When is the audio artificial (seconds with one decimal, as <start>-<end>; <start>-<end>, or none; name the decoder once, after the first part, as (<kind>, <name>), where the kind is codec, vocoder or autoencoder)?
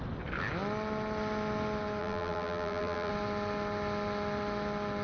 2.0-3.1 (vocoder, BigVGAN v2)